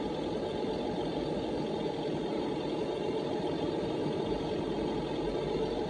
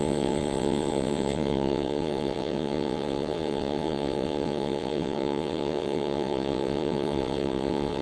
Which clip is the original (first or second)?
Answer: first